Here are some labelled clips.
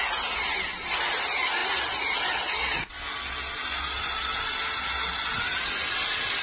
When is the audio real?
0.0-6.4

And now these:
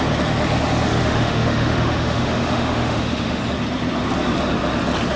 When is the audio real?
0.0-1.0; 3.4-5.2